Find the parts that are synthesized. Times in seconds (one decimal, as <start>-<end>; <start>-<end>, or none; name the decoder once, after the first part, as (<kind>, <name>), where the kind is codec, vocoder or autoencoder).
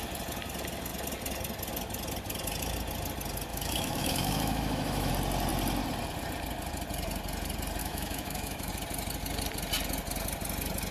3.5-5.1 (autoencoder, DAC-VAE); 7.8-8.7